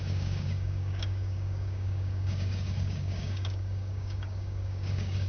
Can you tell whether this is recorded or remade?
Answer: remade